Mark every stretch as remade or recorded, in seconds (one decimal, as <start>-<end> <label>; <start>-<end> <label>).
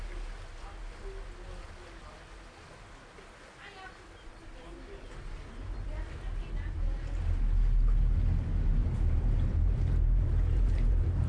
0.0-8.8 recorded; 8.8-11.3 remade